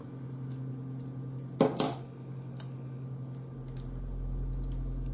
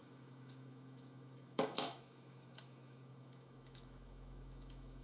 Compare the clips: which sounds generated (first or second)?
second